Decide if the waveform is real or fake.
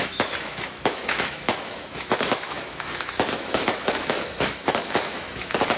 fake